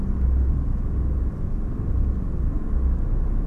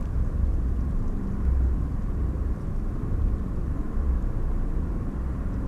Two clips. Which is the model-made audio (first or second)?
second